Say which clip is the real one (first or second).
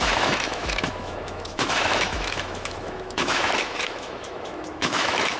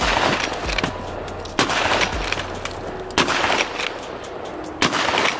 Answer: second